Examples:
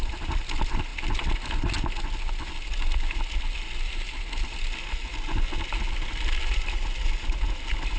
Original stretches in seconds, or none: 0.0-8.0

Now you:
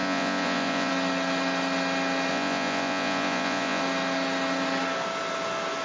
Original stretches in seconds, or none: 0.9-2.3; 3.8-5.8

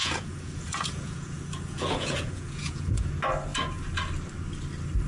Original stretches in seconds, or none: 3.1-5.1

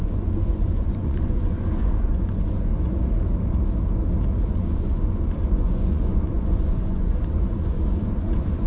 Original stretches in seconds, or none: 2.7-4.5

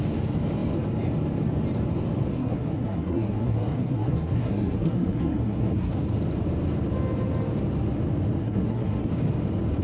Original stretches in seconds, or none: 0.0-2.3; 5.9-8.4; 9.1-9.8

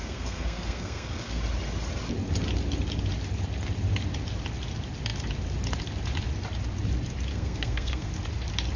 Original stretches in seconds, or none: 1.4-7.3; 8.1-8.8